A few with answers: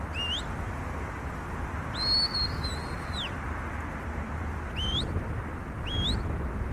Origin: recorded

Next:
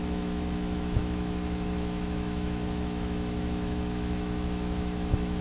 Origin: remade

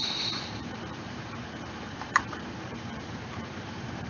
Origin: remade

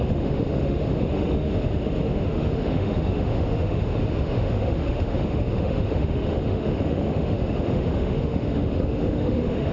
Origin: remade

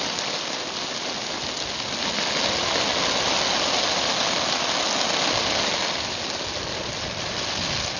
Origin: recorded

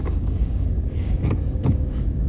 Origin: remade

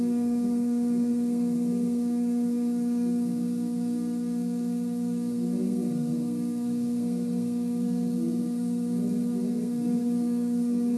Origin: remade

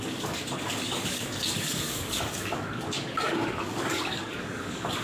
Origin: remade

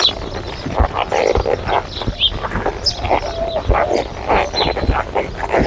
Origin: recorded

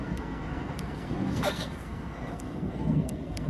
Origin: remade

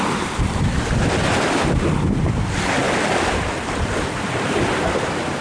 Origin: recorded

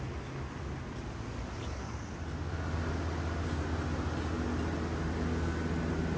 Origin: recorded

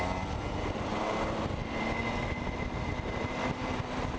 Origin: recorded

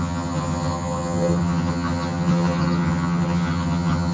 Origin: remade